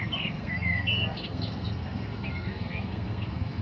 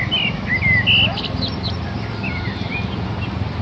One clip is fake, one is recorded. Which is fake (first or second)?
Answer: first